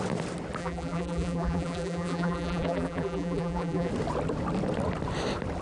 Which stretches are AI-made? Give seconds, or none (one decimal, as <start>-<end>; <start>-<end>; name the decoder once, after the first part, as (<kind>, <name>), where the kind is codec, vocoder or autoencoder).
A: 0.6-3.9 (vocoder, BigVGAN v2)